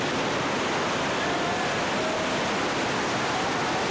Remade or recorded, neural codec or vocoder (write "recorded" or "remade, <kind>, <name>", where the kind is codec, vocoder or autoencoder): recorded